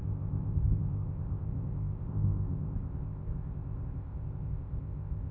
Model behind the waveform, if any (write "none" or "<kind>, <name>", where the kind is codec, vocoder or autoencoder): codec, ZipCodec